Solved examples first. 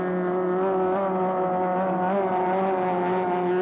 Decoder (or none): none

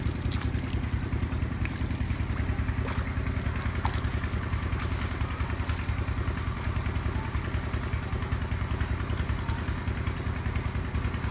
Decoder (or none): none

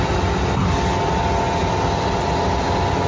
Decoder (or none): none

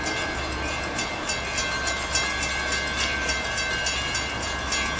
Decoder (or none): none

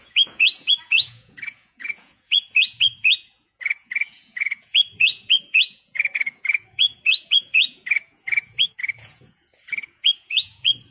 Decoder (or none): vocoder, Vocos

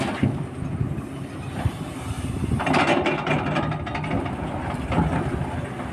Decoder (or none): none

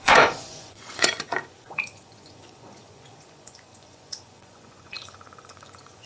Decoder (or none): vocoder, Vocos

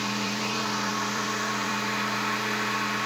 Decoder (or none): vocoder, BigVGAN v2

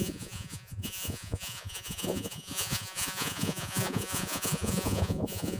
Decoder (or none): vocoder, Vocos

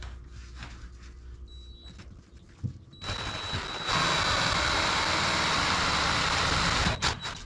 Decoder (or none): none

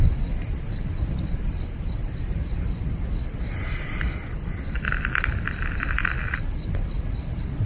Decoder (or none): none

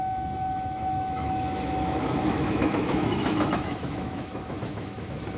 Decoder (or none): autoencoder, DAC-VAE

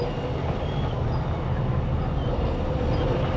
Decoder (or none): none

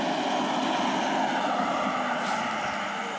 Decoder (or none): none